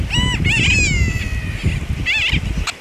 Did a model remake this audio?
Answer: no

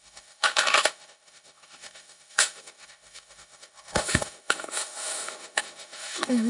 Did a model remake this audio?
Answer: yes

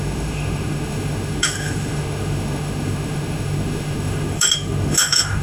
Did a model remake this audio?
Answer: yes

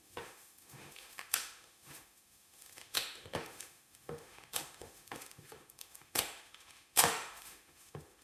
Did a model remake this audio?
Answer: yes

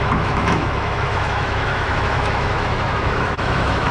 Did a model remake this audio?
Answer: yes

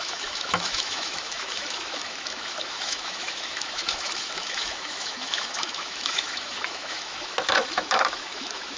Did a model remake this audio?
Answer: yes